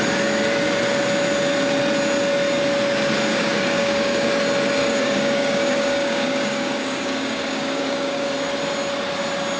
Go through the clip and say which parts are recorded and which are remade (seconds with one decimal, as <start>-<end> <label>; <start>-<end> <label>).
0.0-3.3 recorded; 3.3-4.3 remade; 4.3-4.8 recorded; 4.8-8.3 remade; 8.3-9.6 recorded